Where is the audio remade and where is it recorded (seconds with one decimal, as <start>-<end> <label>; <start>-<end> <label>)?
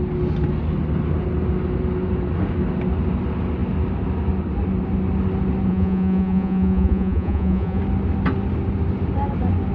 0.0-5.7 recorded; 5.7-7.8 remade; 7.8-9.7 recorded